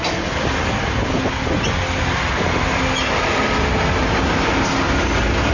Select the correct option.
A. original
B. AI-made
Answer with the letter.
A